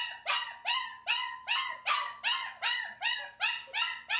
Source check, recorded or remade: recorded